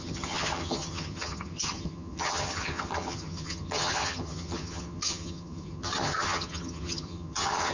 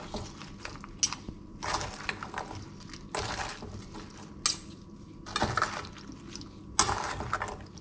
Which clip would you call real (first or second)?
second